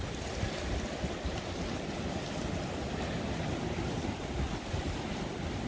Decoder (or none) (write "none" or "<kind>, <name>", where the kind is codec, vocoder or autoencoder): none